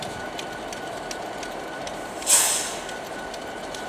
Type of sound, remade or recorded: recorded